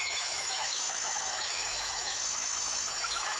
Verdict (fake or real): fake